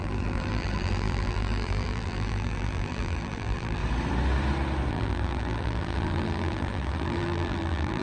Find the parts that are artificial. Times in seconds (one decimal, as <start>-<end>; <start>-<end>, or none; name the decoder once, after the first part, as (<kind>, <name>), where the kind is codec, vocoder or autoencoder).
0.0-3.8 (vocoder, BigVGAN v2); 4.9-8.0